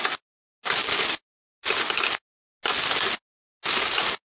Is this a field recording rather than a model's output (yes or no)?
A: yes